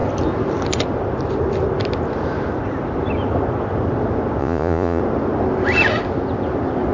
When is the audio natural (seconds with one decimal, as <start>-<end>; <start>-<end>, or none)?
0.0-4.4; 5.0-6.9